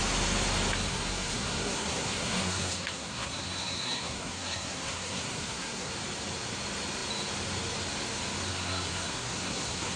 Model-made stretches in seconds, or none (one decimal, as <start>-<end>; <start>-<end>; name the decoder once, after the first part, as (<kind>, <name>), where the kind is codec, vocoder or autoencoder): 0.9-5.9 (codec, SNAC); 8.5-10.0